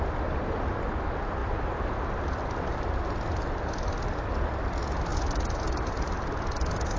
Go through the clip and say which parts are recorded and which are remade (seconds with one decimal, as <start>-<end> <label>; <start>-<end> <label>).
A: 0.0-7.0 recorded